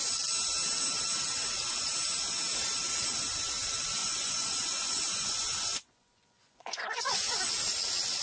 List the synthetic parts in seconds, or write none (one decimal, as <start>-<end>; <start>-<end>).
4.0-7.5